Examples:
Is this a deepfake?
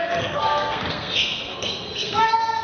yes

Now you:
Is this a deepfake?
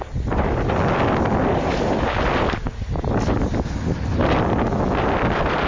no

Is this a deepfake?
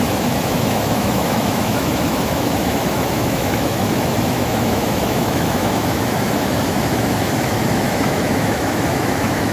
yes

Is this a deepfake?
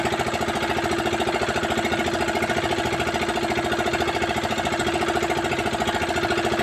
no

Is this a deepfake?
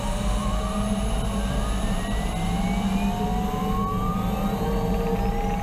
no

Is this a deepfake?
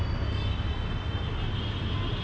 no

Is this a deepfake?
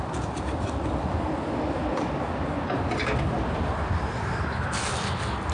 no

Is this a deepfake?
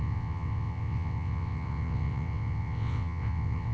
yes